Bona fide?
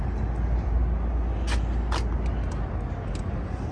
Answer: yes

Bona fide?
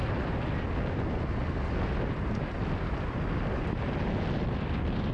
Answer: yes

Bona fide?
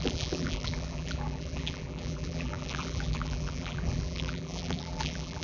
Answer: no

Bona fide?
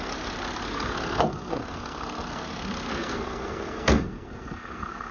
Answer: no